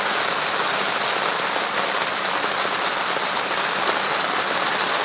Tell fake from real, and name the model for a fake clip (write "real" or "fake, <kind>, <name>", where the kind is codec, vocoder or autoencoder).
real